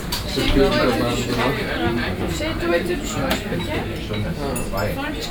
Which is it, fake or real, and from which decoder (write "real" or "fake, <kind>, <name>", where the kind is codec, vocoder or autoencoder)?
real